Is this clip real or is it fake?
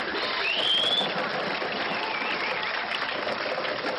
real